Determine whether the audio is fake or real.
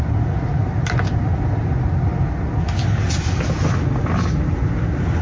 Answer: real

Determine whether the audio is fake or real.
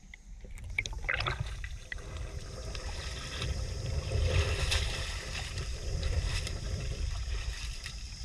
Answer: fake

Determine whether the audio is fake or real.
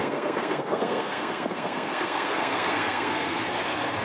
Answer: fake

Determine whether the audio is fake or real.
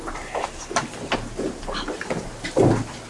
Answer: real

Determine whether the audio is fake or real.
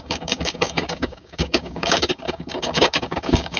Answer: fake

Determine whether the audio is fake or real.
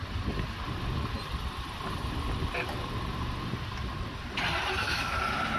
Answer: real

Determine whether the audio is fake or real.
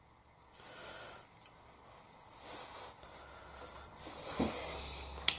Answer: real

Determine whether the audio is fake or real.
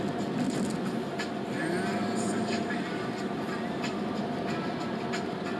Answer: real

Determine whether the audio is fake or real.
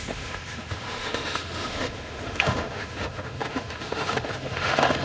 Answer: fake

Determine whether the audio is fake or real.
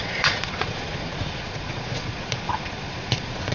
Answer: fake